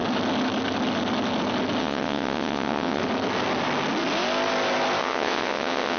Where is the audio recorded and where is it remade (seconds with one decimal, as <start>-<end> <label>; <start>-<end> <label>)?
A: 0.0-1.8 recorded; 1.8-3.0 remade; 3.0-5.0 recorded; 5.0-6.0 remade